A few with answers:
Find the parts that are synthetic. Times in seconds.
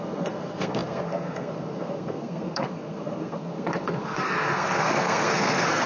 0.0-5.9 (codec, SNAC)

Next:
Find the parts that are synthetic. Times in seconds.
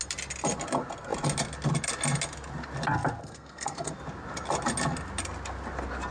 3.2-3.9 (codec, SNAC)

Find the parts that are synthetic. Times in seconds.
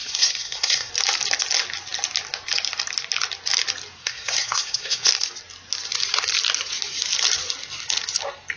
0.0-0.9 (codec, SNAC); 4.0-5.1